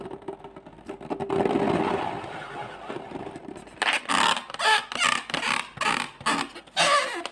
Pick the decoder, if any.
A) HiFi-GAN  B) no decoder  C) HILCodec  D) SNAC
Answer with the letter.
B